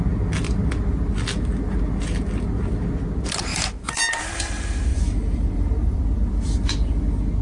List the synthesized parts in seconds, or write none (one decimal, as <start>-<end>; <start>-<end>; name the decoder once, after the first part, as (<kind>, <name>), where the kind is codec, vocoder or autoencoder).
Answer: 3.5-4.0 (vocoder, BigVGAN v2); 4.9-6.0